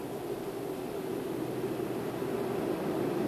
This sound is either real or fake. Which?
real